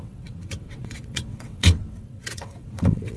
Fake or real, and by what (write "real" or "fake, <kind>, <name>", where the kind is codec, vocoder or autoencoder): fake, vocoder, WaveNeXt